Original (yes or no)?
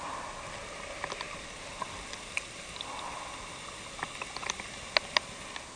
yes